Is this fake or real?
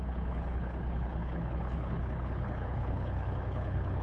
fake